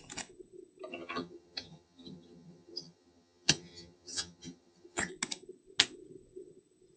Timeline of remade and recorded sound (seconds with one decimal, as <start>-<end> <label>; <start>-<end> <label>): 0.0-0.9 recorded; 0.9-5.1 remade; 5.1-7.0 recorded